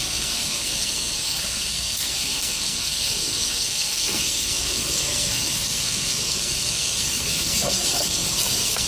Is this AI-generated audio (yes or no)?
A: yes